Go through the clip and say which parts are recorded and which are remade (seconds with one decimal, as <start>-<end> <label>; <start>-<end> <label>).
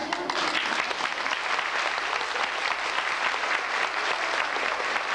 0.0-5.1 recorded